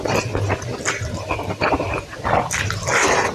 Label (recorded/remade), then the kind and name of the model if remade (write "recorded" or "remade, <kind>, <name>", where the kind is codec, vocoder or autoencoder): recorded